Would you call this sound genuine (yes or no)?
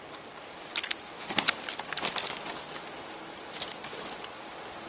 yes